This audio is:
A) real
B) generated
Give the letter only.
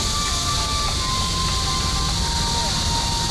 A